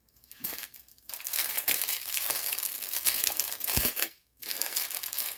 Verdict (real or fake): fake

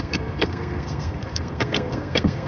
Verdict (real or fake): fake